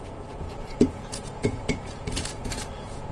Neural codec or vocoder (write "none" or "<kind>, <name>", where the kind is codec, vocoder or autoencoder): vocoder, Vocos